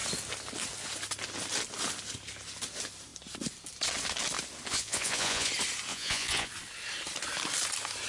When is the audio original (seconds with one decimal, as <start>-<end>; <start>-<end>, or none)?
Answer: 0.0-4.7; 5.5-5.9; 6.5-8.1